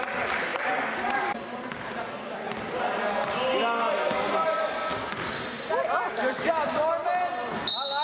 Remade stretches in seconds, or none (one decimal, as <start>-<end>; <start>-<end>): 0.5-2.8; 4.9-6.8